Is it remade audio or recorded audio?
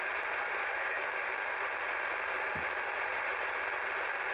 recorded